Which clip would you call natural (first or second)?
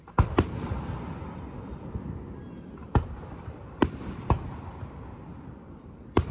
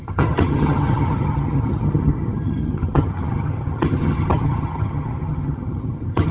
first